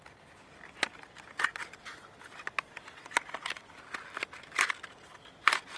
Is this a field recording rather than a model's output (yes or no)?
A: yes